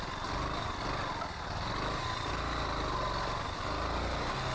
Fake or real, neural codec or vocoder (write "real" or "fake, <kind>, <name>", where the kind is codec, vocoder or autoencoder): real